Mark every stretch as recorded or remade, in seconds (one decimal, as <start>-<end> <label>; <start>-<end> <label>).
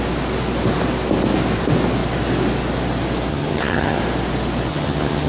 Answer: 0.0-3.3 recorded; 3.3-4.0 remade; 4.0-4.7 recorded; 4.7-5.3 remade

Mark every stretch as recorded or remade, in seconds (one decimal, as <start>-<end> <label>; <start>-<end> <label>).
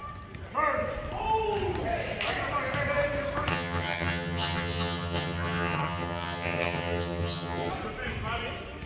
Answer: 0.0-3.5 recorded; 3.5-7.7 remade; 7.7-8.9 recorded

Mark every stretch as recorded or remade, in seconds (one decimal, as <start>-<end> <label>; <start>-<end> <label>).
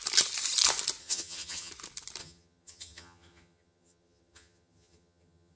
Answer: 0.0-1.0 recorded; 1.0-1.7 remade; 1.7-2.2 recorded; 2.2-5.6 remade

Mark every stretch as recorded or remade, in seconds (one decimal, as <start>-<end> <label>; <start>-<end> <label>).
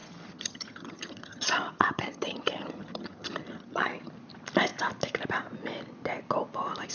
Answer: 0.0-4.1 remade; 4.1-6.9 recorded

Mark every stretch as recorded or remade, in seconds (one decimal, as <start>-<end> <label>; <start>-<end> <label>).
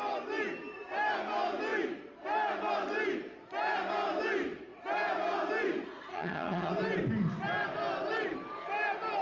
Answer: 0.0-6.1 recorded; 6.1-6.7 remade; 6.7-9.2 recorded